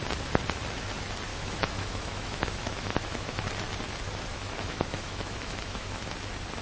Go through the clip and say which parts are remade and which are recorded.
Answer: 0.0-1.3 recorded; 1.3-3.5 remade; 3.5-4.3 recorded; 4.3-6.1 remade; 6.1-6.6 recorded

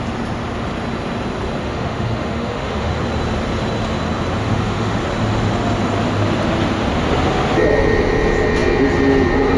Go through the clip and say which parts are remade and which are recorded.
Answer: 0.0-1.6 recorded; 1.6-2.9 remade; 2.9-4.4 recorded; 4.4-5.0 remade; 5.0-9.6 recorded

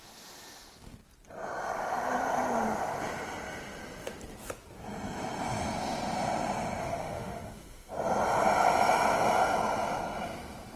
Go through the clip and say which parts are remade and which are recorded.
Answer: 0.0-6.8 recorded; 6.8-7.9 remade; 7.9-10.8 recorded

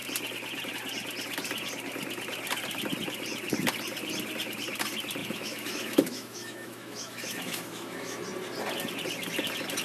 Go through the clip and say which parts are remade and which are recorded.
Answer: 0.0-5.2 recorded; 5.2-8.2 remade; 8.2-9.8 recorded

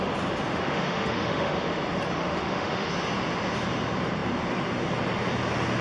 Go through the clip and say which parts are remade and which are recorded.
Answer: 0.0-0.5 recorded; 0.5-1.8 remade; 1.8-2.2 recorded; 2.2-2.9 remade; 2.9-5.8 recorded

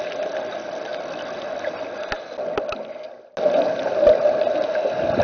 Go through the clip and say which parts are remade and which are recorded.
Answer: 0.0-5.2 recorded

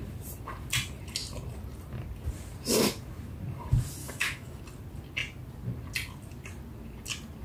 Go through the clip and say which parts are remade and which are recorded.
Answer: 0.0-4.0 recorded; 4.0-4.6 remade; 4.6-7.4 recorded

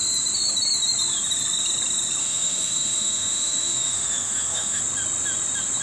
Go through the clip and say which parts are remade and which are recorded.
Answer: 0.0-2.2 recorded; 2.2-4.8 remade; 4.8-5.8 recorded